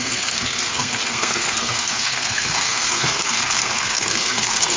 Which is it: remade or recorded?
remade